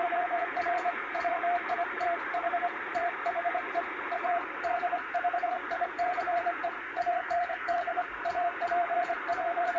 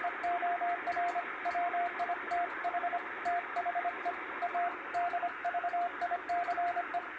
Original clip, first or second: second